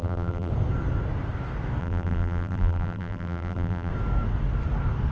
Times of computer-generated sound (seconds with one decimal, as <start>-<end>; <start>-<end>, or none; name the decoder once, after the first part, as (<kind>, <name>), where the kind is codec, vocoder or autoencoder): 0.0-0.5 (vocoder, BigVGAN v2); 1.8-3.9